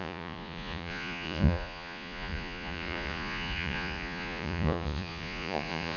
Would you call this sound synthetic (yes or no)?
yes